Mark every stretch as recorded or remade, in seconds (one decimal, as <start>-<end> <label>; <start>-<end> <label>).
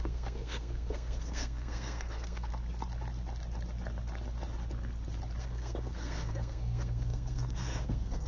0.0-2.5 remade; 2.5-5.4 recorded; 5.4-8.3 remade